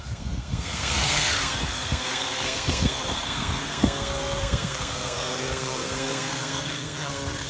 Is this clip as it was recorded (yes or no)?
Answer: no